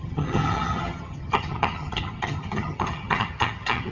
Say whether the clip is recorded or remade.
remade